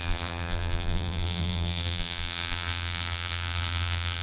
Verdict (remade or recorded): remade